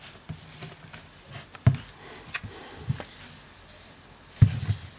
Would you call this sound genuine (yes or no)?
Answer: yes